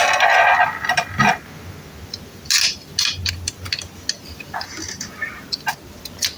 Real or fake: real